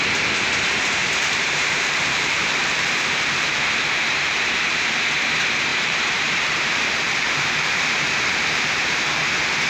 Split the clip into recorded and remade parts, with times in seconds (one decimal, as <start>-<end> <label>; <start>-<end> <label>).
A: 0.0-1.0 recorded; 1.0-4.9 remade; 4.9-5.7 recorded; 5.7-9.2 remade; 9.2-9.7 recorded